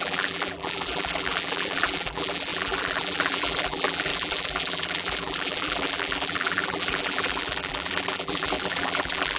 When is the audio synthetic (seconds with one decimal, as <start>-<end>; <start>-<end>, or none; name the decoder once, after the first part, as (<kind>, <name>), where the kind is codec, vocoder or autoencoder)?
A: 0.0-9.4 (vocoder, BigVGAN v2)